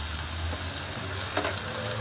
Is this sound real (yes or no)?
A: yes